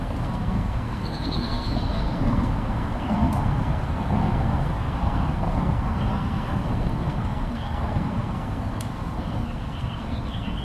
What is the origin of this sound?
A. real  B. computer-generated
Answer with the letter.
B